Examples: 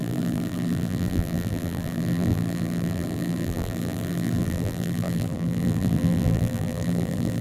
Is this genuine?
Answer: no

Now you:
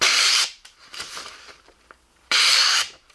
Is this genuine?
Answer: no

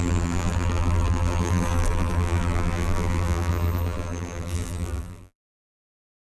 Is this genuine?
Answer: no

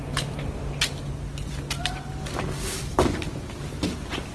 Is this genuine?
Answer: yes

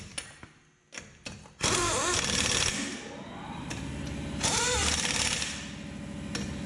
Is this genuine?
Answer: yes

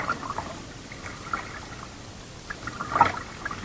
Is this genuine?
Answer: yes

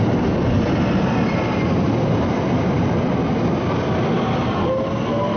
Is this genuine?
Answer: yes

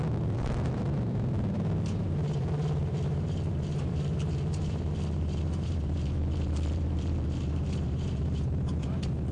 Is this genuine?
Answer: no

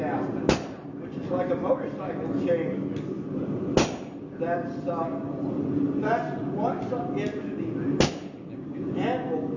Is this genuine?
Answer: yes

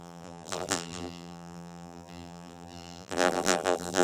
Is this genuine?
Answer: no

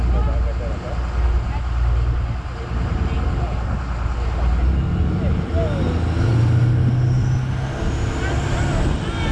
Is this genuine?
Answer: yes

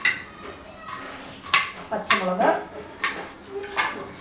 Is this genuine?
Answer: yes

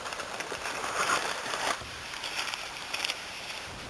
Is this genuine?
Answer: no